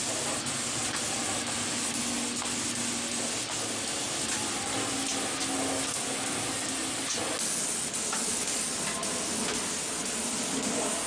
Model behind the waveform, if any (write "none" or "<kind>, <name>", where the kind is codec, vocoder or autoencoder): none